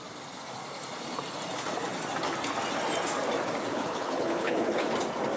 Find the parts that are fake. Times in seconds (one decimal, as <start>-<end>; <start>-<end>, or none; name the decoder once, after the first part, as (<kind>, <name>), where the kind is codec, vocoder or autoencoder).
3.7-4.9 (codec, HILCodec)